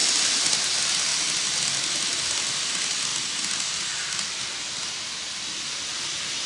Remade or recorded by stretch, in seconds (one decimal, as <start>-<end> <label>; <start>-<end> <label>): 0.0-6.5 recorded